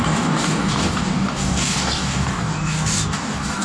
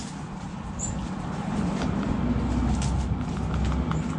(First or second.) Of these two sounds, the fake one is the first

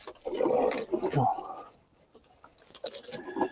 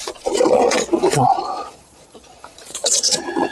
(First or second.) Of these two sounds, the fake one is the second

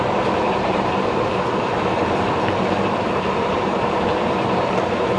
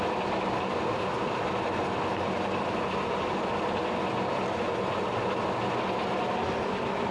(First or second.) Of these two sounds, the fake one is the first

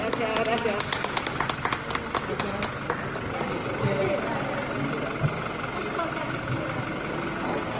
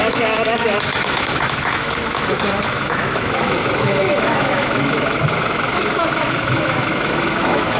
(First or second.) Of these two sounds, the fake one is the second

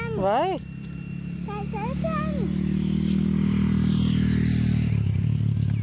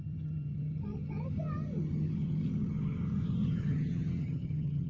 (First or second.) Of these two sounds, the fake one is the second